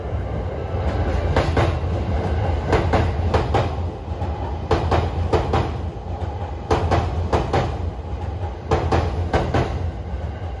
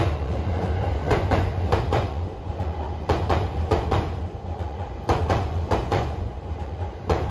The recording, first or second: first